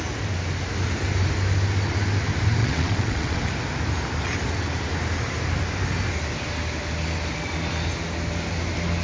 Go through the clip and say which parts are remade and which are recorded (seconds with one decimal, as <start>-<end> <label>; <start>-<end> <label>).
0.0-2.6 recorded; 2.6-3.4 remade; 3.4-9.0 recorded